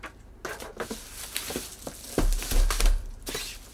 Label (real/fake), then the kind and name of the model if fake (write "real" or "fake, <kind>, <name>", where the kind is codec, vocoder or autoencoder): real